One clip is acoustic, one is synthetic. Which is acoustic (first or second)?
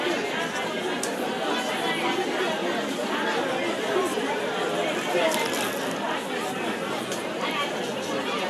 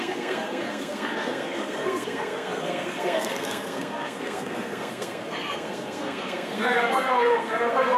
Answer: first